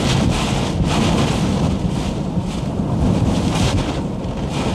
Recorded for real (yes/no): yes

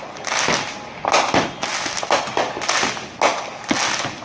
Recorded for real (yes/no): yes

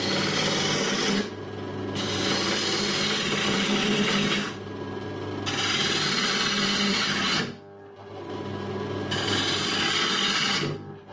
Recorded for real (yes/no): yes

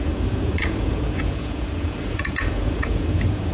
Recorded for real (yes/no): no